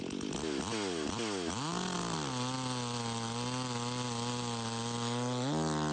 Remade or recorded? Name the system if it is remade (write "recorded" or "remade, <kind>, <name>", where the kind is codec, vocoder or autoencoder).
recorded